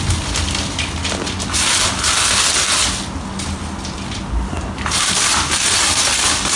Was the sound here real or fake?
real